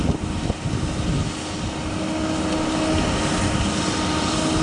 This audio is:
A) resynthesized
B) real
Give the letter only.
B